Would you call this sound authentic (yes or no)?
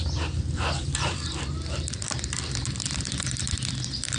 no